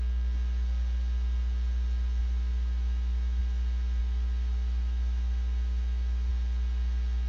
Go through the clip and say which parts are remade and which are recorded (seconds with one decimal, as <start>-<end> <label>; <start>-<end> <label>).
0.0-2.2 recorded; 2.2-3.4 remade; 3.4-4.0 recorded; 4.0-6.3 remade; 6.3-7.3 recorded